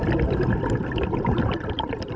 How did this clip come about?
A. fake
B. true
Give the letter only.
B